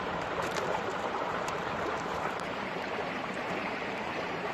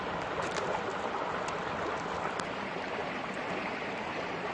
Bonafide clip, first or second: second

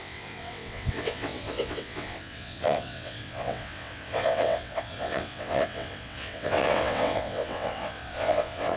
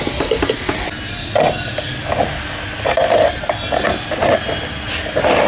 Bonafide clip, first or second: second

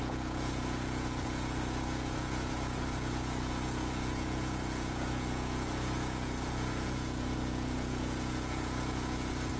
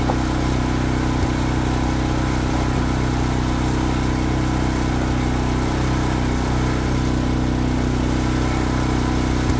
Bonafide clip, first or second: second